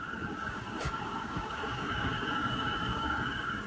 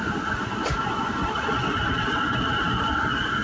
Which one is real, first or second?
second